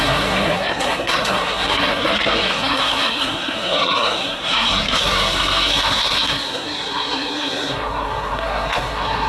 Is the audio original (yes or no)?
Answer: no